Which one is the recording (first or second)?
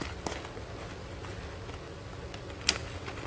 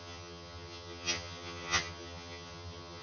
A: first